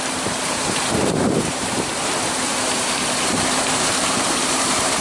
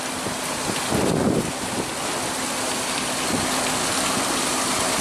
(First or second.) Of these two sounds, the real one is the second